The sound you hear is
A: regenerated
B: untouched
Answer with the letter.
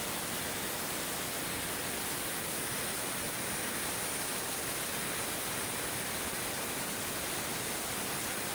B